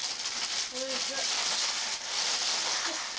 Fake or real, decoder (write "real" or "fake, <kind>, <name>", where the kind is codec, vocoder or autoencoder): real